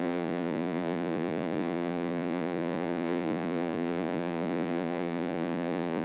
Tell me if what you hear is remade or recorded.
remade